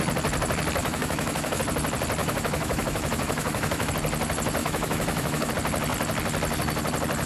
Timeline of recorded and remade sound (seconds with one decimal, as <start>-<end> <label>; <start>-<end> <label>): 0.0-0.8 recorded; 0.8-1.6 remade; 1.6-2.2 recorded; 2.2-3.9 remade; 3.9-4.6 recorded; 4.6-5.5 remade; 5.5-7.3 recorded